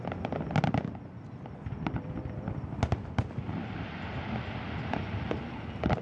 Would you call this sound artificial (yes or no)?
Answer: no